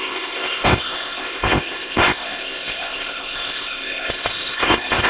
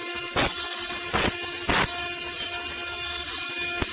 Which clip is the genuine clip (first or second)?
second